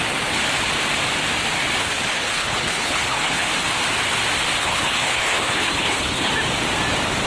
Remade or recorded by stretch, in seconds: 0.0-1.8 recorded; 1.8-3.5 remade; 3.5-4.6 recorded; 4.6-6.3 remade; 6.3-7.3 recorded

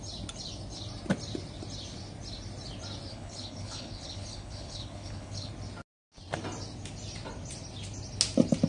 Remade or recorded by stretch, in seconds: 0.0-3.1 recorded; 3.1-5.5 remade; 5.5-8.7 recorded

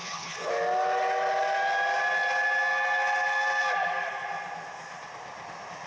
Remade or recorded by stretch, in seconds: 0.0-0.5 remade; 0.5-5.9 recorded

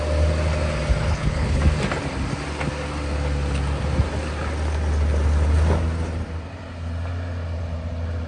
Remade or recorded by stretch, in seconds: 0.0-1.1 recorded; 1.1-1.6 remade; 1.6-8.3 recorded

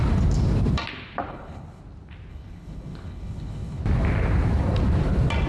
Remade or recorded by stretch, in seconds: 0.0-1.3 recorded; 1.3-1.8 remade; 1.8-2.3 recorded; 2.3-3.8 remade; 3.8-5.5 recorded